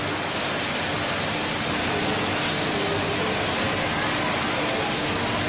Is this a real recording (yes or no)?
yes